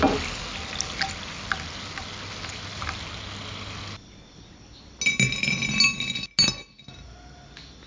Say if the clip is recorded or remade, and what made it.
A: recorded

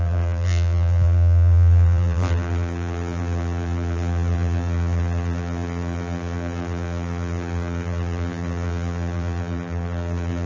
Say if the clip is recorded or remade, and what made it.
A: remade, vocoder, BigVGAN v2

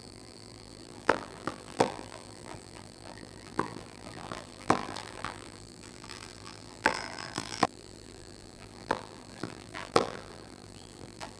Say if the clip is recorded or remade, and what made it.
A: remade, vocoder, BigVGAN v2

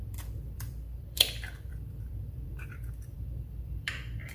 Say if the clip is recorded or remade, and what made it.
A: remade, vocoder, BigVGAN v2